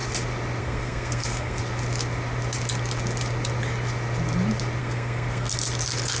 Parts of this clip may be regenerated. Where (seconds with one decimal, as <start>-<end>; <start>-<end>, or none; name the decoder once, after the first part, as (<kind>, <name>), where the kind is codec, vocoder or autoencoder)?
0.6-1.6 (codec, SNAC); 4.8-5.5